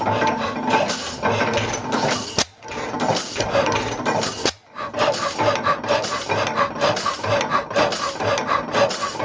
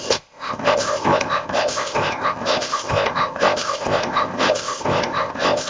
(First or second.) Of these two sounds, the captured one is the first